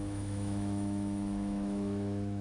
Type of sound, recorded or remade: remade